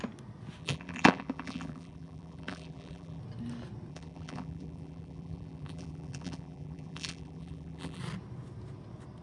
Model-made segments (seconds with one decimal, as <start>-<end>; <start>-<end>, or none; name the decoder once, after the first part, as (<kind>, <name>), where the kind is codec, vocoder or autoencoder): 0.6-3.2 (vocoder, BigVGAN v2); 3.9-8.0